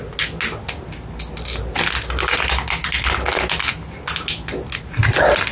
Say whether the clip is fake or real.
real